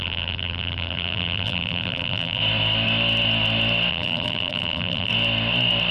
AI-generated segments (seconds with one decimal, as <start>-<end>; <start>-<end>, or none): 0.0-2.4; 3.9-5.1